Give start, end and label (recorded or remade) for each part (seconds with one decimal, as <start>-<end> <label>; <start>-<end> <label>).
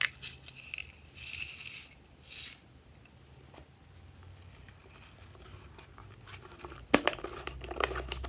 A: 0.0-8.3 recorded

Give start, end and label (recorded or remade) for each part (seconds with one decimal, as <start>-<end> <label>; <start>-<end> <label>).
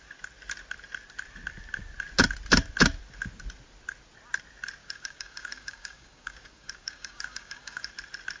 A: 0.0-4.8 recorded; 4.8-7.9 remade; 7.9-8.4 recorded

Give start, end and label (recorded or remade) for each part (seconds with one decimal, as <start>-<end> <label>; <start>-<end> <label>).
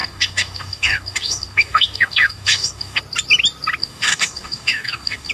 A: 0.0-3.0 remade; 3.0-3.8 recorded; 3.8-5.3 remade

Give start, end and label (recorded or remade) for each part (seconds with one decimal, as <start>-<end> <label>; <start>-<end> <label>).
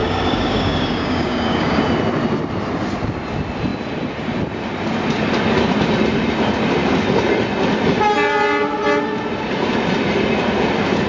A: 0.0-1.8 remade; 1.8-11.1 recorded